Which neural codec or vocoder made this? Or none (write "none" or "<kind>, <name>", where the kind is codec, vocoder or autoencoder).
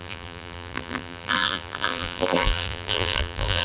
vocoder, BigVGAN v2